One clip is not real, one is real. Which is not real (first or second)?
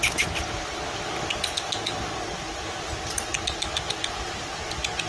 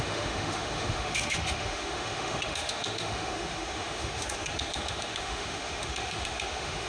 second